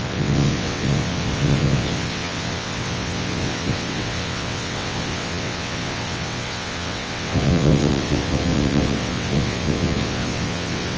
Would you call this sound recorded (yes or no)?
no